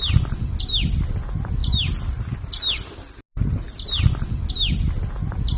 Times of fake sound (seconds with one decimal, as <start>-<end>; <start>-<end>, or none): none